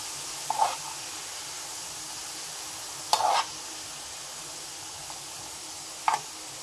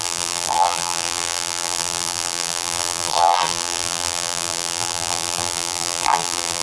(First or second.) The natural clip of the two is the first